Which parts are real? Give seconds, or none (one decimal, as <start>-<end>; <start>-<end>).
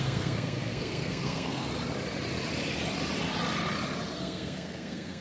1.7-4.2